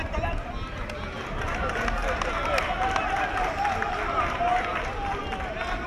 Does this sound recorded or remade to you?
recorded